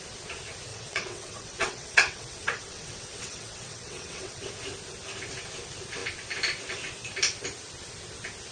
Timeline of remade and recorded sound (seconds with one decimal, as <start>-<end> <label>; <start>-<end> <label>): 0.0-0.7 recorded; 0.7-4.5 remade; 4.5-8.5 recorded